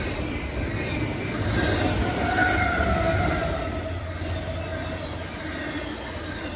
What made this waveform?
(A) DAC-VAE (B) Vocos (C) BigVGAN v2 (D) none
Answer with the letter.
D